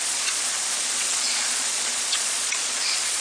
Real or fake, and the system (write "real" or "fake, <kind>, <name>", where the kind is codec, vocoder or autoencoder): fake, vocoder, Vocos